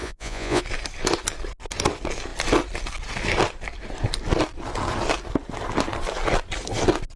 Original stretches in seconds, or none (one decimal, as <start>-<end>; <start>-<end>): 0.6-7.2